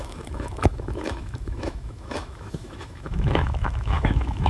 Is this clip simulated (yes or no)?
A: yes